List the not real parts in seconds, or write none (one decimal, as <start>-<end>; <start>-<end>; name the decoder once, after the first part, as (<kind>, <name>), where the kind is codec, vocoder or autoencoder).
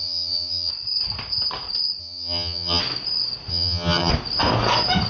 0.0-0.7 (vocoder, HiFi-GAN); 2.0-2.8; 3.5-4.1